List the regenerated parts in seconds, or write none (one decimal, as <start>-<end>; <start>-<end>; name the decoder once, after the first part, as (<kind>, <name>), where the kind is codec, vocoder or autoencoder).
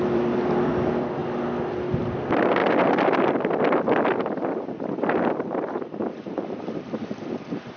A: 0.0-1.2 (vocoder, BigVGAN v2); 1.9-7.8